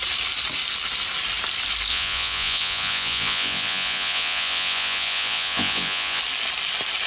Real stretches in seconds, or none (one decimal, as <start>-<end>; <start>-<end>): 0.0-1.9; 6.2-7.1